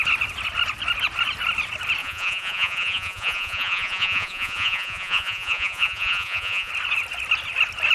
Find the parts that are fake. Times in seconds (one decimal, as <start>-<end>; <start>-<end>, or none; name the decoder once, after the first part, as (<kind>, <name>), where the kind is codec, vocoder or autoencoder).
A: 2.0-6.7 (vocoder, Vocos)